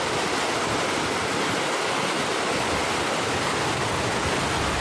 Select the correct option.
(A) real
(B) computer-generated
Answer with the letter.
A